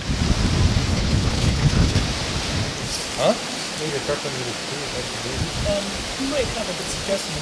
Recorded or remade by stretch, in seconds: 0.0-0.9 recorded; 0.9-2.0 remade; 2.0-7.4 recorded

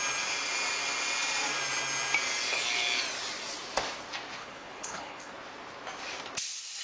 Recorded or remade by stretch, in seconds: 0.0-4.4 recorded; 4.4-5.3 remade; 5.3-6.8 recorded

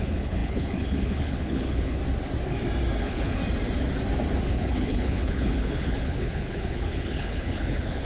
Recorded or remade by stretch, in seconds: 0.0-2.0 remade; 2.0-3.0 recorded; 3.0-3.4 remade; 3.4-4.4 recorded; 4.4-8.0 remade

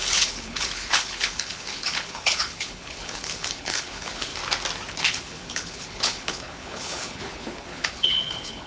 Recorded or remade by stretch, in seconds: 0.0-4.3 remade; 4.3-4.9 recorded; 4.9-8.7 remade

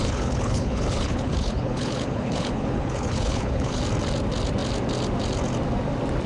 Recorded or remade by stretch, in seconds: 0.0-3.8 remade; 3.8-6.3 recorded